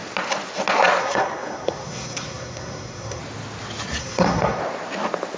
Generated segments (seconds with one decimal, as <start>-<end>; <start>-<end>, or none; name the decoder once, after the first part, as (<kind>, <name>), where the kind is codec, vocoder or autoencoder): 1.0-3.2 (codec, SNAC); 4.0-4.6